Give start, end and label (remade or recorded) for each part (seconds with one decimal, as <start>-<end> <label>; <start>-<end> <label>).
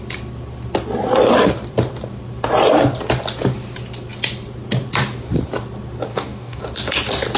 0.0-6.1 recorded; 6.1-6.6 remade; 6.6-7.4 recorded